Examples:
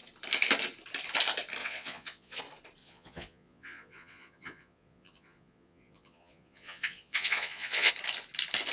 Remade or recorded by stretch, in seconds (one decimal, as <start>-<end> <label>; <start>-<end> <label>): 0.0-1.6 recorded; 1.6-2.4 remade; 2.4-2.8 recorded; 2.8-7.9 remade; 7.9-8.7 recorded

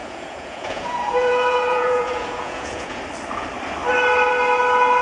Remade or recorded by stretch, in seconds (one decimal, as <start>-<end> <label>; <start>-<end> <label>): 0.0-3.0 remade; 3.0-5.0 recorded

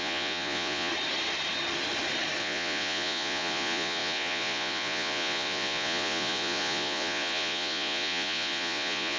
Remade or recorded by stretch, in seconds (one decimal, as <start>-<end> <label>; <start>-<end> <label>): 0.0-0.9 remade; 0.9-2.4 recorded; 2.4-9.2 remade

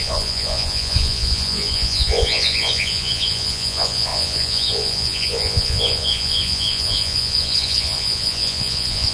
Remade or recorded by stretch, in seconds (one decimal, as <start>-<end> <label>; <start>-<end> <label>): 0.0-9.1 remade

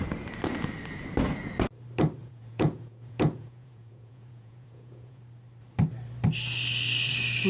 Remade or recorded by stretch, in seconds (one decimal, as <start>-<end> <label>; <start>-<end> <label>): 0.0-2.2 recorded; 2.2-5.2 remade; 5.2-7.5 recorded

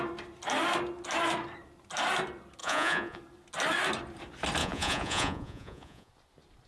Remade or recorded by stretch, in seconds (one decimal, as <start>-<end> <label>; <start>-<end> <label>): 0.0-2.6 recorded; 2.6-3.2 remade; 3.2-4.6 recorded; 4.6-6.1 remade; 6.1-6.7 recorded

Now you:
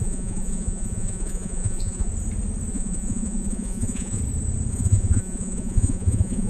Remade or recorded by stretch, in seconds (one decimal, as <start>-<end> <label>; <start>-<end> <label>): 0.0-2.1 remade; 2.1-2.7 recorded; 2.7-4.2 remade; 4.2-4.7 recorded; 4.7-6.5 remade